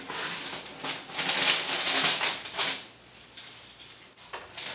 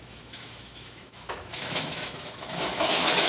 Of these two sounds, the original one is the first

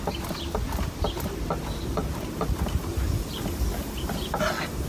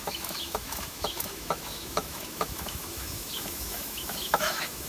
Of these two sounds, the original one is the first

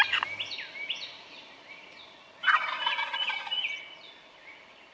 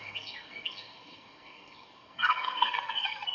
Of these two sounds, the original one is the first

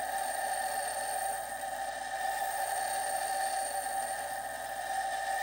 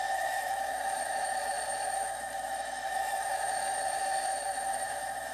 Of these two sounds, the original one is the first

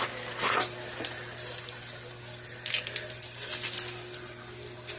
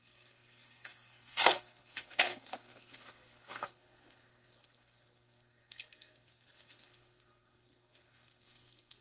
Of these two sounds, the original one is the first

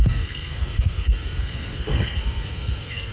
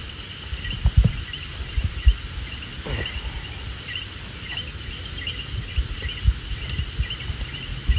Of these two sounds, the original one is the second